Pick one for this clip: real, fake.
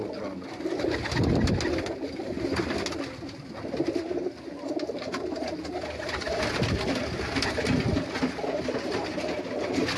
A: real